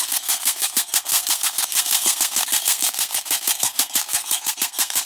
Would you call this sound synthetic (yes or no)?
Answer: yes